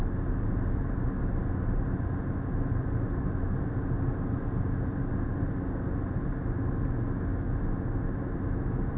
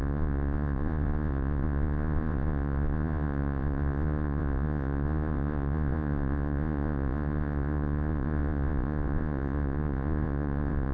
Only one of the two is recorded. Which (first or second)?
first